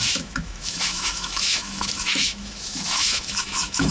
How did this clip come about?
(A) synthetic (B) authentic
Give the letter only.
A